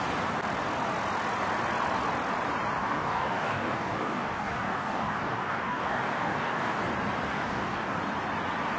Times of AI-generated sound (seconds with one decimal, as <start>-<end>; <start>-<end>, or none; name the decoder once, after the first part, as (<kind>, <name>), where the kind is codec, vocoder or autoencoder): 2.8-6.8 (codec, DAC); 7.3-8.0